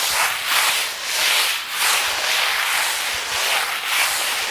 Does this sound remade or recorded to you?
recorded